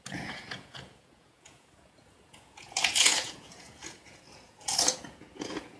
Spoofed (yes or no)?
yes